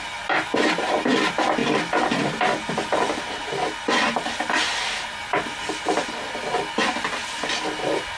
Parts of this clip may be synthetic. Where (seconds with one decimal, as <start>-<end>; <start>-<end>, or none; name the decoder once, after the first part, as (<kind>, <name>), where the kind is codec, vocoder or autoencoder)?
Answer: none